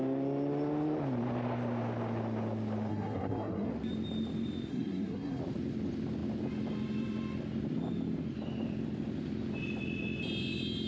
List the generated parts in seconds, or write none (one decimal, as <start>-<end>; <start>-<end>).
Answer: 2.9-3.7; 4.7-5.4